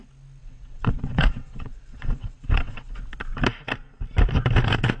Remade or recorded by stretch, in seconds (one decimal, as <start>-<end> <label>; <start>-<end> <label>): 0.0-0.4 recorded; 0.4-2.9 remade; 2.9-5.0 recorded